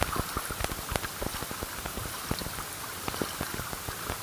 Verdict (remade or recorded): recorded